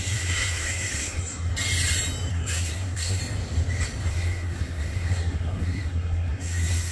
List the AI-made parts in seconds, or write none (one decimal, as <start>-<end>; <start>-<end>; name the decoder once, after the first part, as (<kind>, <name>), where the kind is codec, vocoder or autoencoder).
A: 0.0-1.5 (codec, SNAC); 2.3-3.2; 4.1-6.9